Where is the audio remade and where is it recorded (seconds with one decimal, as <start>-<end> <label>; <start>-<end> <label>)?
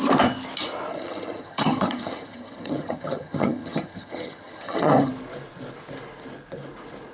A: 0.0-0.9 recorded; 0.9-5.1 remade; 5.1-7.1 recorded